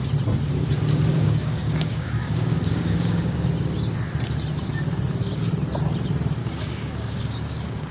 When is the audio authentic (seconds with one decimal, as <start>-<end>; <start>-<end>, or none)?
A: 0.0-1.1; 3.5-6.4

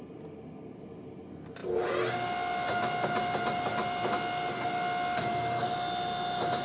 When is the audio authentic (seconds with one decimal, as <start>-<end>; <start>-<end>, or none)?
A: 0.0-6.6